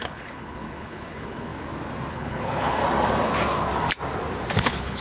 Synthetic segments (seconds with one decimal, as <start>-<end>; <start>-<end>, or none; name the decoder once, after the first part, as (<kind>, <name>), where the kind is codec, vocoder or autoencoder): 0.0-1.5 (codec, HILCodec); 2.1-2.8; 4.6-5.0